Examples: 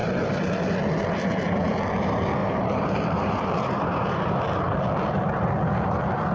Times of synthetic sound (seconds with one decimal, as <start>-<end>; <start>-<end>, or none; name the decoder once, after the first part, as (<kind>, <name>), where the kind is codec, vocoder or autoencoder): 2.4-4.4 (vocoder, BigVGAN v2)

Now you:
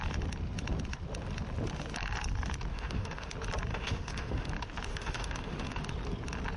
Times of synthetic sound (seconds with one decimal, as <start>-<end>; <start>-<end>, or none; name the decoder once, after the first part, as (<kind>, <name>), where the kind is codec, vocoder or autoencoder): 2.7-3.3 (autoencoder, DAC-VAE); 3.7-4.5; 4.9-5.8

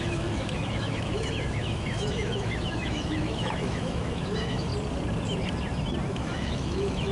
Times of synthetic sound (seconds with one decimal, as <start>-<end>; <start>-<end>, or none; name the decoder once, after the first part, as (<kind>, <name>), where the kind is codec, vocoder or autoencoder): 0.0-4.7 (autoencoder, DAC-VAE); 6.1-7.1

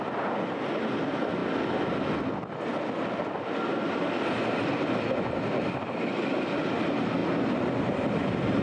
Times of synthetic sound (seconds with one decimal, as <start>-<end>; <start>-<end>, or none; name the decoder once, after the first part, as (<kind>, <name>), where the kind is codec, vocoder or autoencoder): none

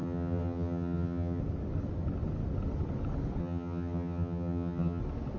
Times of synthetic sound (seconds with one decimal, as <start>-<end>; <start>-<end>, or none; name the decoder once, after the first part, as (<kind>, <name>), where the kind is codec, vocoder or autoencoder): 0.0-1.4 (vocoder, HiFi-GAN); 3.4-5.0

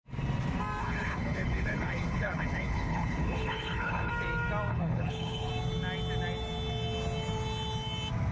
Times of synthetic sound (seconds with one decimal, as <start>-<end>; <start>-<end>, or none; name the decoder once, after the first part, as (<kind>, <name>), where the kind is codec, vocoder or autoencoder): 0.8-4.1 (codec, HILCodec); 4.7-5.5

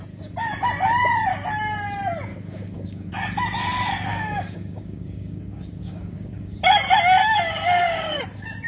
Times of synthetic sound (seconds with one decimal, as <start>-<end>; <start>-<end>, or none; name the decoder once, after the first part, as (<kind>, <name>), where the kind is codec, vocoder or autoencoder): 2.3-3.1 (codec, DAC); 4.1-6.6; 7.2-8.2

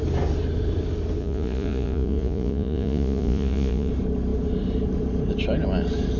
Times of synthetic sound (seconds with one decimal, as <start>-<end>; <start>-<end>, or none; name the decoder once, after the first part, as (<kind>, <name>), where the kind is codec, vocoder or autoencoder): 1.2-3.9 (vocoder, Vocos)